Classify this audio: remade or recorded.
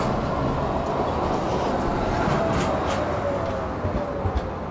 recorded